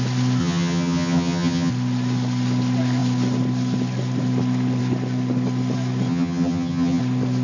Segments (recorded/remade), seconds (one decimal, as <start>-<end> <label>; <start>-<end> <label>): 0.0-0.4 recorded; 0.4-1.7 remade; 1.7-6.1 recorded; 6.1-7.0 remade; 7.0-7.4 recorded